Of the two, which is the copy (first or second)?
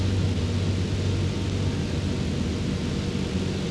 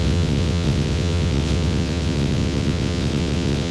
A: second